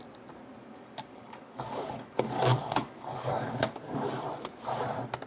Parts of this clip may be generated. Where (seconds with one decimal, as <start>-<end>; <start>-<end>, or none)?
0.6-3.8